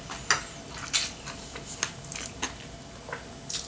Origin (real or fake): real